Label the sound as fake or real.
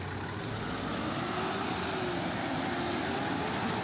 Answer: real